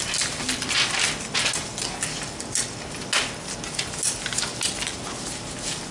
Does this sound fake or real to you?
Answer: real